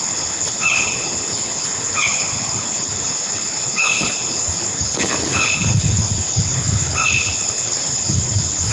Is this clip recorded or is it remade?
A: remade